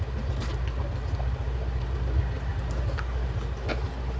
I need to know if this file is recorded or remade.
recorded